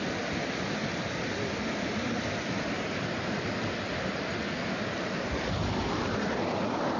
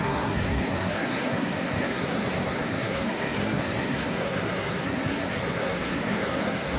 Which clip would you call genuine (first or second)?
first